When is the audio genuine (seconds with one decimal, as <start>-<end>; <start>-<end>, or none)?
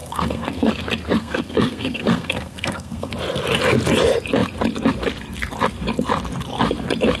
0.7-1.2; 3.1-7.2